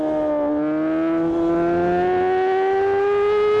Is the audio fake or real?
real